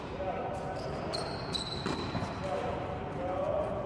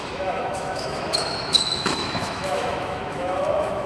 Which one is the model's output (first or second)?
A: second